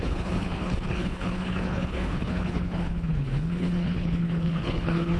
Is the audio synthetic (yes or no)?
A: yes